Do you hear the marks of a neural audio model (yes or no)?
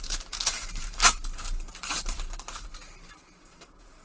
yes